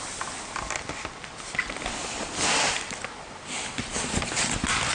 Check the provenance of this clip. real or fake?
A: real